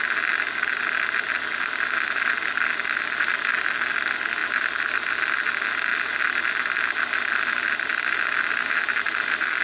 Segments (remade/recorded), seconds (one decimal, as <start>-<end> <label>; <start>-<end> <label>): 0.0-9.6 recorded